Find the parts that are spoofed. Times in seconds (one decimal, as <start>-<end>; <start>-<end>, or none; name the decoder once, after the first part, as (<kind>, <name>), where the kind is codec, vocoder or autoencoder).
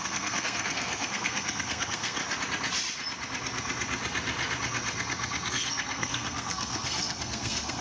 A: 0.0-2.2 (codec, SNAC); 5.5-7.8